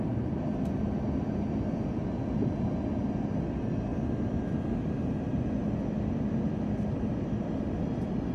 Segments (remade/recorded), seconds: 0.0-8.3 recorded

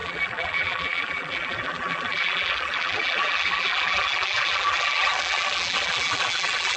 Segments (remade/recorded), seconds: 0.0-6.8 remade

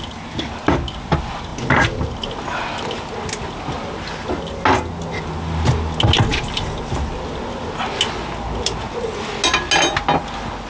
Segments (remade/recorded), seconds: 0.0-6.3 recorded; 6.3-7.1 remade; 7.1-10.7 recorded

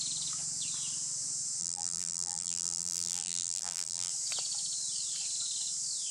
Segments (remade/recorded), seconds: 0.0-1.6 recorded; 1.6-4.1 remade; 4.1-6.1 recorded

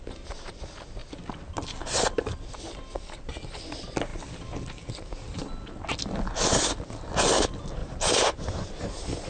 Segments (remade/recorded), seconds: 0.0-7.8 recorded; 7.8-9.3 remade

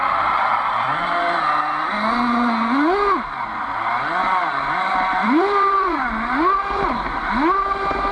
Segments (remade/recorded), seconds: 0.0-0.5 recorded; 0.5-1.2 remade; 1.2-4.4 recorded; 4.4-7.2 remade; 7.2-8.1 recorded

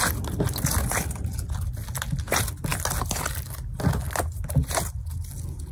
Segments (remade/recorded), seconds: 0.0-5.7 recorded

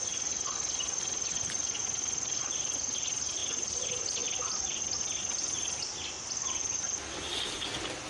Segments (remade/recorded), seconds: 0.0-8.1 recorded